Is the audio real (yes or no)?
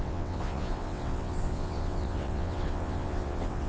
no